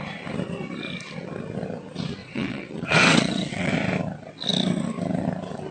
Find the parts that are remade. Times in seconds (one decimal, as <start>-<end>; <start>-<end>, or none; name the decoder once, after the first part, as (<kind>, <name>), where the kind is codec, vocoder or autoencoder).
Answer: 2.2-3.7 (vocoder, WaveNeXt)